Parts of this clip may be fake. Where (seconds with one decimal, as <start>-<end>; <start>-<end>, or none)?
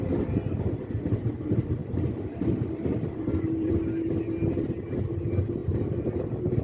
1.8-3.7; 5.6-6.6